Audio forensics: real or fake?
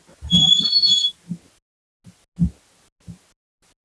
real